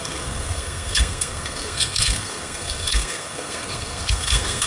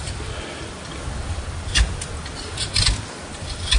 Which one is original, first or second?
second